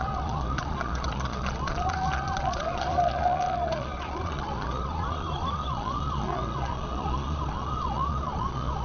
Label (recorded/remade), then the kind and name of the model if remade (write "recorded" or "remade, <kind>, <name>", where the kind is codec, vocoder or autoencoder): remade, vocoder, Vocos